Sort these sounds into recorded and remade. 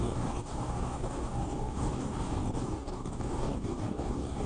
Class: remade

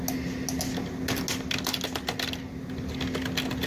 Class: recorded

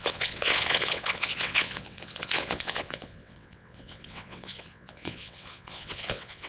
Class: remade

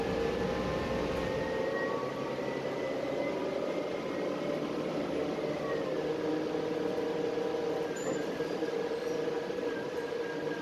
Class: recorded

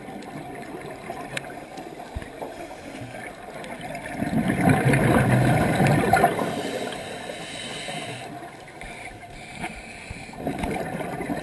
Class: recorded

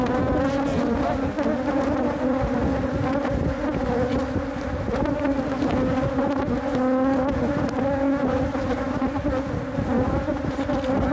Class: recorded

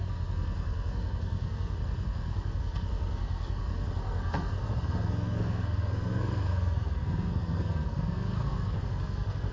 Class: remade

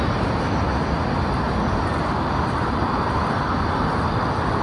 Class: recorded